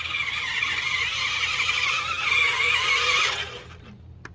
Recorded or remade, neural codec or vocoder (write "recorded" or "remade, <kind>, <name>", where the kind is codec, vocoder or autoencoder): recorded